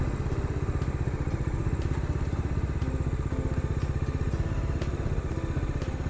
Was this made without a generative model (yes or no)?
yes